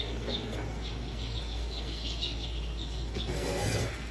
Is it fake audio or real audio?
fake